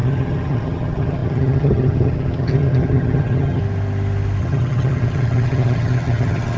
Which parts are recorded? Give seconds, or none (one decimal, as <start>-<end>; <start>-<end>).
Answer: 3.6-4.4